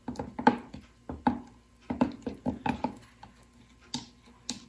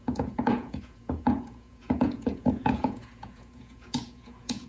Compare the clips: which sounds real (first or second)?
first